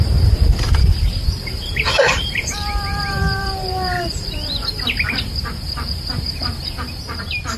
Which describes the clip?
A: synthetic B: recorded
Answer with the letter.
A